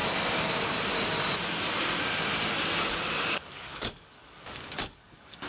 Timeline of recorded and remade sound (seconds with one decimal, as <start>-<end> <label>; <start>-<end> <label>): 0.0-3.3 recorded; 3.3-5.5 remade